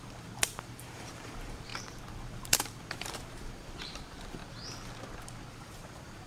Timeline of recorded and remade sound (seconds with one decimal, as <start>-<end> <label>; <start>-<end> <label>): 0.0-4.4 remade; 4.4-5.5 recorded; 5.5-6.3 remade